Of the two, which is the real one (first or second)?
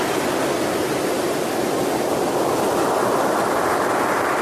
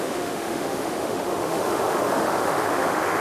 first